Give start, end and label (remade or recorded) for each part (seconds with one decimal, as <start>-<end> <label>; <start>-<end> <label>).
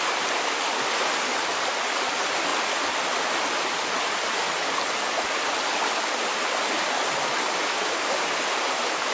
0.0-9.1 recorded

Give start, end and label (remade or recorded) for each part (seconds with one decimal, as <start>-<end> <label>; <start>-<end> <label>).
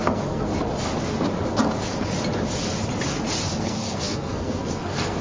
0.0-0.5 remade; 0.5-3.6 recorded; 3.6-5.2 remade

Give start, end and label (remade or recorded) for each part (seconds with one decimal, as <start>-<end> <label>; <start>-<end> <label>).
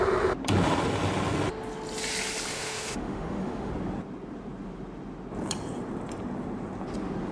0.0-2.5 recorded; 2.5-3.7 remade; 3.7-7.3 recorded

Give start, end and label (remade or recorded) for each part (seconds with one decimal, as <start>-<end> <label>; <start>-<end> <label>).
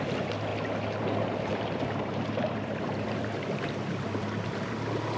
0.0-1.5 recorded; 1.5-4.6 remade; 4.6-5.2 recorded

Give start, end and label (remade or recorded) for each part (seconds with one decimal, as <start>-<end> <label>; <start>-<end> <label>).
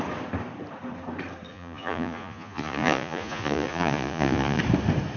0.0-1.5 recorded; 1.5-4.6 remade; 4.6-5.2 recorded